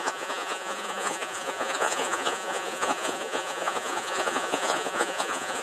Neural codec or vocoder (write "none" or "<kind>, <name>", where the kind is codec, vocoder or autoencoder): vocoder, Vocos